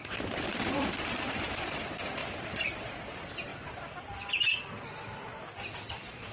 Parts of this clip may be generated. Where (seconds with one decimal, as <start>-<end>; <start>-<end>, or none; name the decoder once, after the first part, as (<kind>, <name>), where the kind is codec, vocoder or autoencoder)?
0.5-1.4 (vocoder, BigVGAN v2); 2.2-3.0; 3.5-4.3; 5.3-6.3